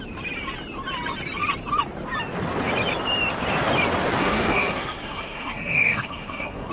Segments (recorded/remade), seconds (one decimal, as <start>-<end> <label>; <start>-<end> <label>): 0.0-4.2 recorded; 4.2-6.7 remade